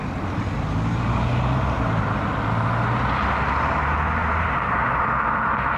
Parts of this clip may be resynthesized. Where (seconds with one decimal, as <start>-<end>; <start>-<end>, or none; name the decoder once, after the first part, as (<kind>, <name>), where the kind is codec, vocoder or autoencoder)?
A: 4.2-5.2 (vocoder, BigVGAN v2)